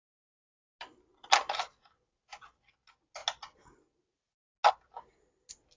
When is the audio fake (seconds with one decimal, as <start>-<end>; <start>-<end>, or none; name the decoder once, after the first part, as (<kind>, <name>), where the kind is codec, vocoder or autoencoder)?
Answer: none